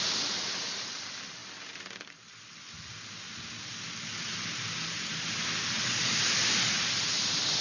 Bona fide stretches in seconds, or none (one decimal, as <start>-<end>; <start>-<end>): 0.0-7.6